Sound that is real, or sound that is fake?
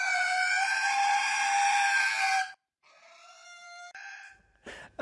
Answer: fake